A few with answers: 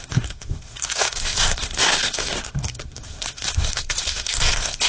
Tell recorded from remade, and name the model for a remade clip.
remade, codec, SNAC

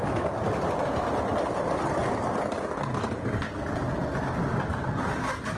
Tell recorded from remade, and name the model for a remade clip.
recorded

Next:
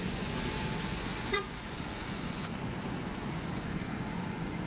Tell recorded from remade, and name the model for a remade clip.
remade, vocoder, Vocos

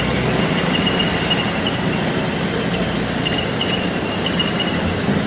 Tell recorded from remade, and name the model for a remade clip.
recorded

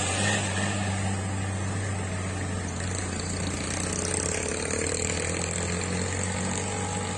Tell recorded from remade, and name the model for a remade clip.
recorded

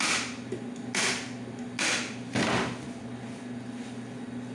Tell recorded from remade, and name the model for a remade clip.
recorded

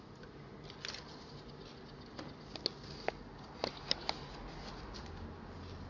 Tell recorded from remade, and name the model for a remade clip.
recorded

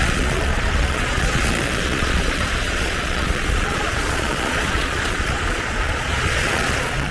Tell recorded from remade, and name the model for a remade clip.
remade, vocoder, Vocos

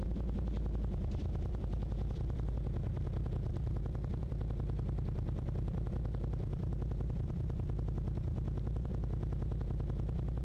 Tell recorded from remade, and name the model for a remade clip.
remade, vocoder, BigVGAN v2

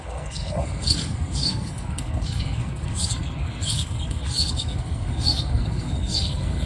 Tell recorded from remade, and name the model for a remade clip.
remade, codec, SNAC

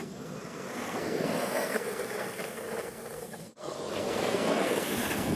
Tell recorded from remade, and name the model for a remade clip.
remade, codec, SNAC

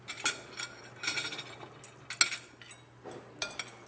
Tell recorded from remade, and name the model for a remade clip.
recorded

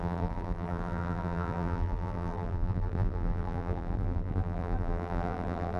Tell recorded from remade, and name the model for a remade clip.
remade, vocoder, BigVGAN v2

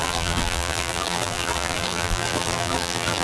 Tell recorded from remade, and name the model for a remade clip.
remade, vocoder, BigVGAN v2